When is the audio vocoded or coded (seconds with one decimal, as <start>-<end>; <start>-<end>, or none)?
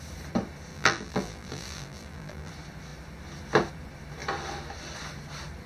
0.7-2.5